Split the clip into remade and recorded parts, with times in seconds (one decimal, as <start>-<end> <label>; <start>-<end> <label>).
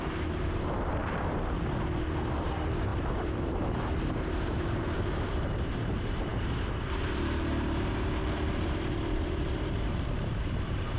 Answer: 0.0-1.0 remade; 1.0-2.3 recorded; 2.3-11.0 remade